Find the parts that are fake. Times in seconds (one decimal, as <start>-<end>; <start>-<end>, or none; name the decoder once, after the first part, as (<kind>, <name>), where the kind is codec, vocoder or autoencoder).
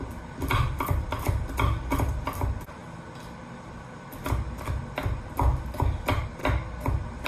none